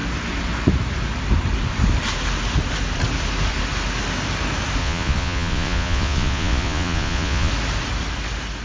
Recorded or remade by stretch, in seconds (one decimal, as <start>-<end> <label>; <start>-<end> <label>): 0.0-4.8 recorded; 4.8-7.5 remade; 7.5-8.6 recorded